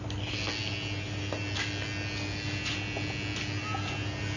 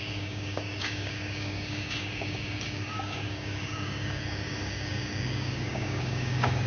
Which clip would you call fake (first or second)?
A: second